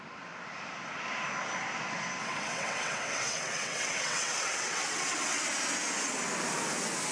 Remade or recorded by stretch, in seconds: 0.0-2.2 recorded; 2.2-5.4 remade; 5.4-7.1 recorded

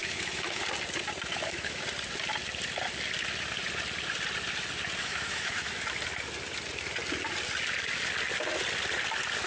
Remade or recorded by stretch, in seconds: 0.0-0.6 remade; 0.6-1.3 recorded; 1.3-1.8 remade; 1.8-5.0 recorded; 5.0-5.7 remade; 5.7-9.5 recorded

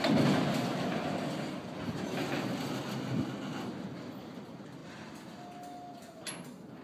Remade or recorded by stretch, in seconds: 0.0-6.8 recorded

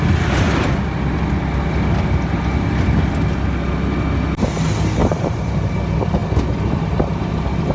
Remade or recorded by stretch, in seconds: 0.0-5.0 recorded; 5.0-5.7 remade; 5.7-7.7 recorded

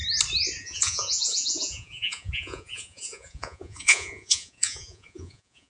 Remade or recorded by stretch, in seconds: 0.0-0.6 recorded; 0.6-5.7 remade